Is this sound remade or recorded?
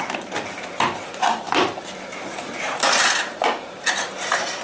remade